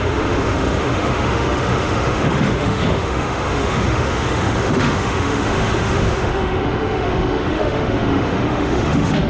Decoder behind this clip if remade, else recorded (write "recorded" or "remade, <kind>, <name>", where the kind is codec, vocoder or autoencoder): remade, autoencoder, DAC-VAE